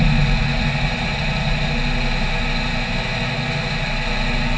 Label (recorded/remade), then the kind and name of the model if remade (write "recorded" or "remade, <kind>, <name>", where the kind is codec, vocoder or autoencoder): recorded